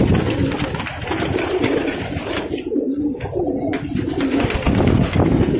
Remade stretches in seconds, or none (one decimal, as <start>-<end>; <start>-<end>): 0.9-4.3